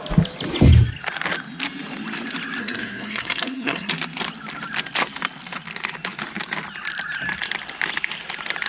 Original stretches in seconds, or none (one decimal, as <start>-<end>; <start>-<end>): 0.0-2.6; 3.9-8.7